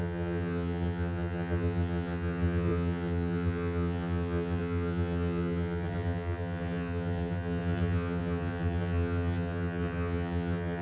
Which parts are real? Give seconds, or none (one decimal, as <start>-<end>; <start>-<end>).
none